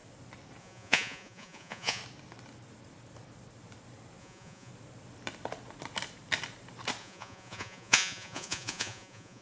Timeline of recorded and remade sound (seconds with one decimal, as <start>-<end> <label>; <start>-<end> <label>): 0.0-0.6 recorded; 0.6-2.0 remade; 2.0-4.2 recorded; 4.2-4.7 remade; 4.7-7.0 recorded; 7.0-9.4 remade